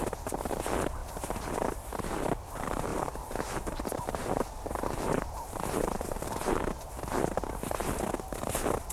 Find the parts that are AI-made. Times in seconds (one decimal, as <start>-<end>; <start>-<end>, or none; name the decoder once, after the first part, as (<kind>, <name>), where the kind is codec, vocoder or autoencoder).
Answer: 2.9-6.7 (vocoder, BigVGAN v2)